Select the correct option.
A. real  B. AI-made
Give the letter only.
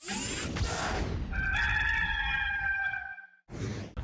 A